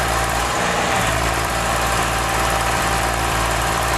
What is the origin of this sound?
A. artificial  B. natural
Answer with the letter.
A